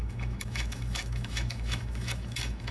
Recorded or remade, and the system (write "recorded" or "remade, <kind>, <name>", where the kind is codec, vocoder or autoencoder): remade, autoencoder, DAC-VAE